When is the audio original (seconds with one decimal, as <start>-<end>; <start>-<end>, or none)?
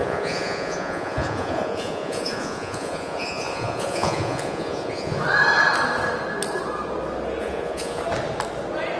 5.2-7.4; 8.0-9.0